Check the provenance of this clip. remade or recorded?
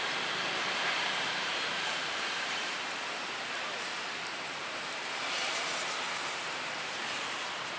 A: remade